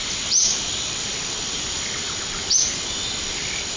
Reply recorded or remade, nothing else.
recorded